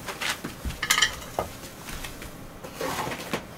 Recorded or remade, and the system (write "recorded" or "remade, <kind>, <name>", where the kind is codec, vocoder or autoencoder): remade, vocoder, BigVGAN v2